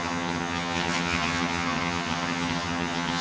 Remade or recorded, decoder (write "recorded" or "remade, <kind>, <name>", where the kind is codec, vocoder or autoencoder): remade, vocoder, HiFi-GAN